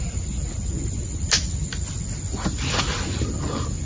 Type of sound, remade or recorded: recorded